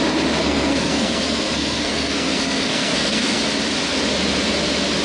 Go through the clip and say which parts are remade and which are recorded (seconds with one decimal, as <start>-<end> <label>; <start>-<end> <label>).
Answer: 0.0-0.4 recorded; 0.4-3.4 remade; 3.4-5.0 recorded